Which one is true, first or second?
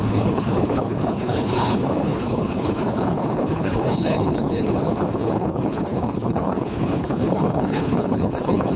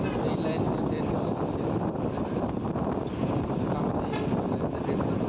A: second